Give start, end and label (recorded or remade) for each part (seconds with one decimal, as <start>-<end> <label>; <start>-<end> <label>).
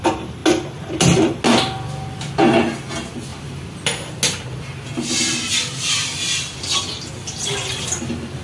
0.0-8.4 recorded